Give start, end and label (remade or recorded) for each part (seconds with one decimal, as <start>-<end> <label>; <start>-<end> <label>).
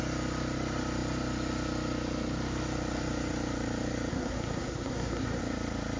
0.0-4.1 recorded; 4.1-5.4 remade; 5.4-6.0 recorded